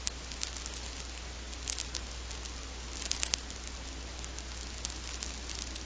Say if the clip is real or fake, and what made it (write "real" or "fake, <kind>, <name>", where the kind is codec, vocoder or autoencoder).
real